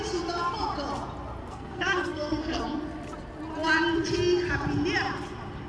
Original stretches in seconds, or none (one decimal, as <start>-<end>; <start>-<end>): 0.0-1.4; 2.6-5.7